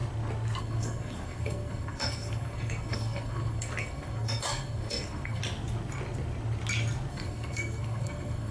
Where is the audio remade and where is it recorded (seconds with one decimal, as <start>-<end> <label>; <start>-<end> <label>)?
0.0-0.6 recorded; 0.6-5.4 remade; 5.4-7.1 recorded; 7.1-8.5 remade